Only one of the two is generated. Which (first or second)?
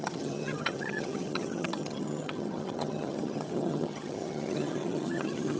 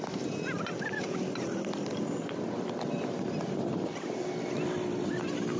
first